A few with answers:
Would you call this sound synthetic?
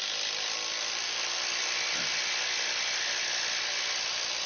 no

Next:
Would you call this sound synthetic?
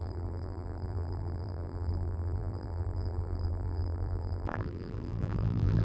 yes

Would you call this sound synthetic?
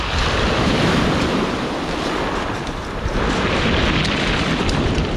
yes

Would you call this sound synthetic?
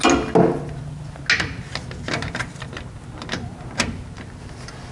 no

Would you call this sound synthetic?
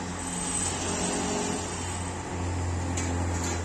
no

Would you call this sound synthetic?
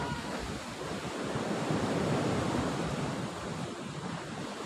yes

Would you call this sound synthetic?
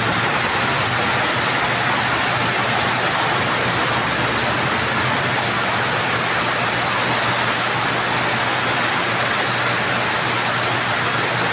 no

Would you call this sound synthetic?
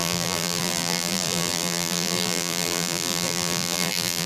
yes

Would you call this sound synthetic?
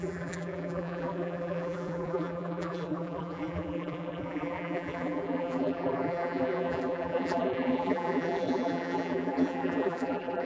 yes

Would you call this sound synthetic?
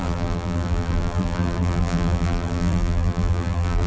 yes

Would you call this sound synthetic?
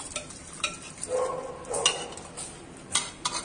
no